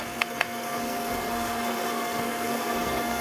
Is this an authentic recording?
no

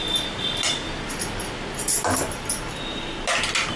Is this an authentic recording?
yes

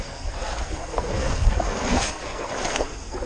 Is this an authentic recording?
no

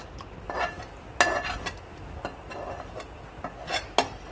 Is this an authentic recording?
yes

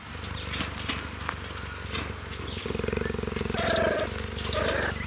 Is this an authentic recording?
yes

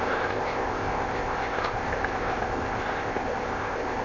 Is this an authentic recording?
no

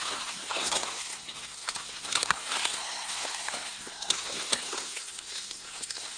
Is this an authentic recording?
no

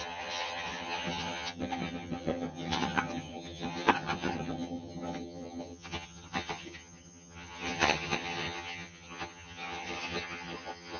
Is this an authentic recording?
no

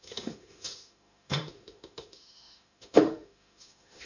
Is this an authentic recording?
no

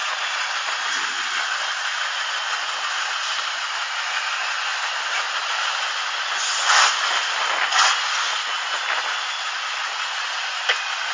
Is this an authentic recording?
yes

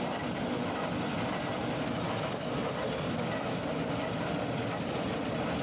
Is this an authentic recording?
yes